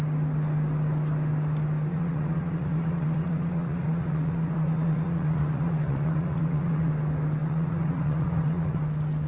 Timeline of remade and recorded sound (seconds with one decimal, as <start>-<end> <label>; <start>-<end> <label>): 0.0-1.9 recorded; 1.9-6.9 remade; 6.9-7.4 recorded; 7.4-8.8 remade; 8.8-9.3 recorded

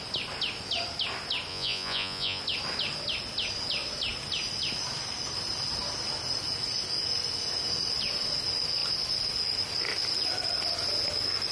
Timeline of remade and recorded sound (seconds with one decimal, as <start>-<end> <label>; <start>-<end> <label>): 0.0-1.5 recorded; 1.5-2.4 remade; 2.4-11.5 recorded

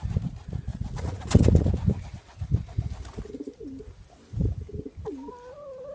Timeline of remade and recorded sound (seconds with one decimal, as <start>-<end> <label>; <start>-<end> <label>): 0.0-0.7 recorded; 0.7-1.7 remade; 1.7-5.9 recorded